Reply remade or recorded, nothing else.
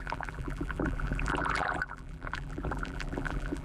remade